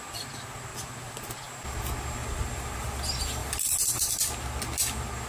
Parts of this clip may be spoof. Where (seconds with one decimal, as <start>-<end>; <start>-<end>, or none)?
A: 0.7-1.2; 2.2-2.9; 3.4-4.1